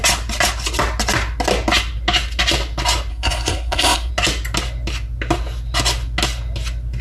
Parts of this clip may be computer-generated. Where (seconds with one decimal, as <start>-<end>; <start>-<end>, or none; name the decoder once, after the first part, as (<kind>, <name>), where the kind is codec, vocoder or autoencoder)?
3.1-4.1 (codec, SNAC)